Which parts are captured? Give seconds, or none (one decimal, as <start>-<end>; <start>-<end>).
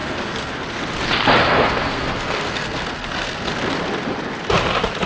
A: 0.5-1.4; 3.5-5.1